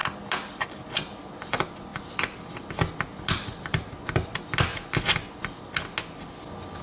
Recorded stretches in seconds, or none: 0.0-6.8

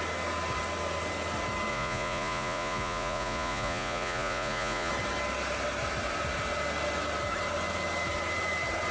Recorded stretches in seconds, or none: 0.0-1.7; 4.9-8.9

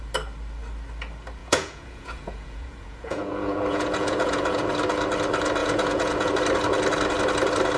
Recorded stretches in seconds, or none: 0.0-1.4; 4.7-5.6; 6.3-7.8

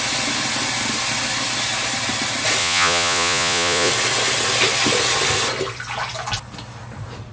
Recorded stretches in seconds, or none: 0.0-2.6; 3.9-7.3

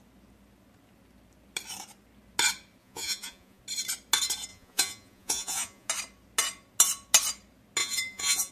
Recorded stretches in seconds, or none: 0.0-2.8; 3.6-4.5; 5.9-7.8

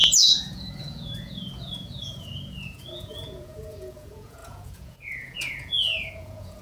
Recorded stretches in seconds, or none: none

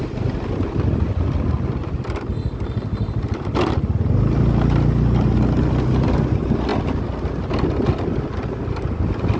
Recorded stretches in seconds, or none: 0.0-9.4